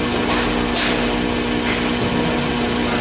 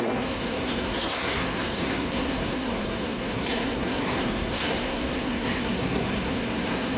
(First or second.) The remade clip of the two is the second